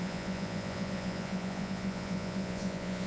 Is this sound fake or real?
fake